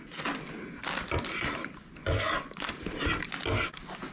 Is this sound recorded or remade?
recorded